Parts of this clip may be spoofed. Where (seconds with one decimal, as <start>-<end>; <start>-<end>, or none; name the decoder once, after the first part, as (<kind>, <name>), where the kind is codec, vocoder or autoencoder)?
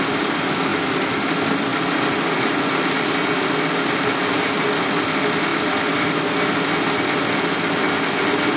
0.7-2.5 (vocoder, BigVGAN v2); 5.5-6.3